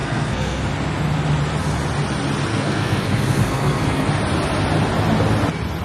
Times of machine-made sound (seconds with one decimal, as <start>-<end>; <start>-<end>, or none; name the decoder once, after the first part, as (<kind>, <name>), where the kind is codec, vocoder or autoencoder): 0.0-0.6 (codec, SNAC); 2.5-4.1